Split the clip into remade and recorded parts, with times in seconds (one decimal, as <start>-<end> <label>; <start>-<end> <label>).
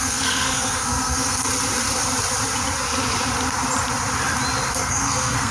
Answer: 0.0-1.4 remade; 1.4-4.7 recorded; 4.7-5.5 remade